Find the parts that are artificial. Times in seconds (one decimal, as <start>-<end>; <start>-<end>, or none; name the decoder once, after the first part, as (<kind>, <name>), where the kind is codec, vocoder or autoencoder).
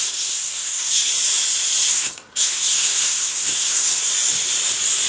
0.0-1.1 (codec, SNAC); 1.9-4.1